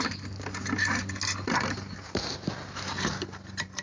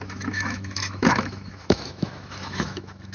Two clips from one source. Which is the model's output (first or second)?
second